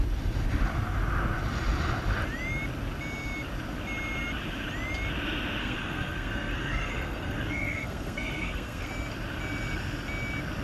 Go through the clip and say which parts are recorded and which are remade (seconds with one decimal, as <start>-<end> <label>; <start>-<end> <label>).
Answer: 0.0-5.6 recorded; 5.6-8.9 remade; 8.9-10.6 recorded

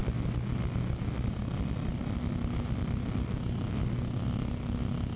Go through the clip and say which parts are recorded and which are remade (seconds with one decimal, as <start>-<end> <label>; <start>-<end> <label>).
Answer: 0.0-5.2 recorded